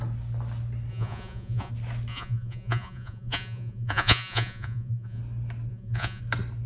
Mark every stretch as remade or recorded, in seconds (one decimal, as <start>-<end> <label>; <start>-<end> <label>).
0.0-0.9 recorded; 0.9-1.7 remade; 1.7-2.1 recorded; 2.1-5.2 remade; 5.2-5.7 recorded; 5.7-6.2 remade; 6.2-6.7 recorded